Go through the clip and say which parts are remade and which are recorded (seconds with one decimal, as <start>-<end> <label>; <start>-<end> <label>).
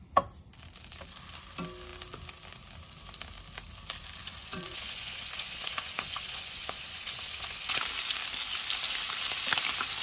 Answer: 0.0-4.2 recorded; 4.2-7.8 remade; 7.8-10.0 recorded